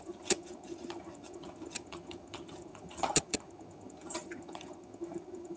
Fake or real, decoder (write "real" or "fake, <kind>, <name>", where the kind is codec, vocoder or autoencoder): fake, vocoder, HiFi-GAN